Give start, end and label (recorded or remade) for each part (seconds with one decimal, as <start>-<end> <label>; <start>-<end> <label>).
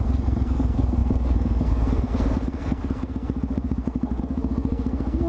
0.0-5.3 remade